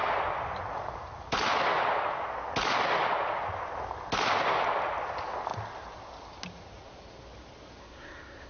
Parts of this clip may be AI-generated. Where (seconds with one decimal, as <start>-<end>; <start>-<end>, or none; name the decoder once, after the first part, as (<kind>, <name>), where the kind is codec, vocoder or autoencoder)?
7.8-8.5 (codec, SNAC)